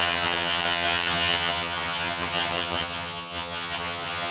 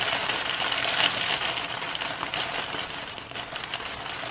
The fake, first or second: first